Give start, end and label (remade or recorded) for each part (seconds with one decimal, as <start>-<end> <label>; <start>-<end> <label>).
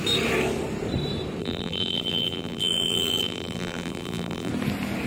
0.0-1.4 recorded; 1.4-4.5 remade; 4.5-5.1 recorded